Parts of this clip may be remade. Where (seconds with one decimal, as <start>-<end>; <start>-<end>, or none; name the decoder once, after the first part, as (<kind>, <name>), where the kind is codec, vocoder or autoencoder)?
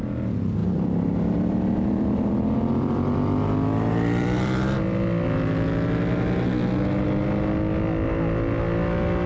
0.6-5.2 (vocoder, BigVGAN v2)